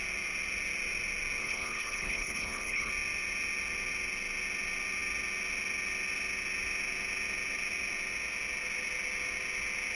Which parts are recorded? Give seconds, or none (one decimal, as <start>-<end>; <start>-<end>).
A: 0.0-1.4; 2.9-10.0